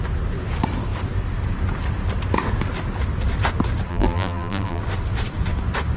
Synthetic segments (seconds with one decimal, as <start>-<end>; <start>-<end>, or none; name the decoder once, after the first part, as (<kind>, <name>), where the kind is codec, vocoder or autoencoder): 3.9-4.8 (vocoder, BigVGAN v2)